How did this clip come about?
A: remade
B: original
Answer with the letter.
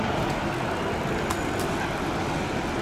B